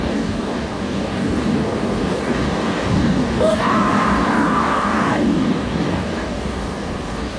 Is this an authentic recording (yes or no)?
no